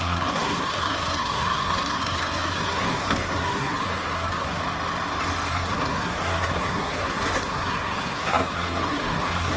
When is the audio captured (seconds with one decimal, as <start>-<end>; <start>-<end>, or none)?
4.6-5.5

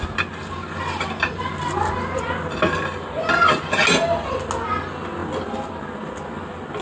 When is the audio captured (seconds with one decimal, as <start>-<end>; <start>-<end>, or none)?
0.0-6.8

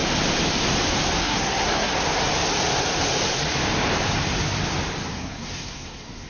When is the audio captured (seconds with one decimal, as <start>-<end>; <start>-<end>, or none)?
0.0-1.2; 1.9-5.1

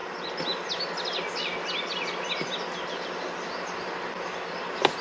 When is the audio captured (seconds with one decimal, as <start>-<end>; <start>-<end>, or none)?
0.0-5.0